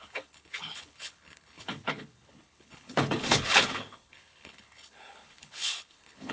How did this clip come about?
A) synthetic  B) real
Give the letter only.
A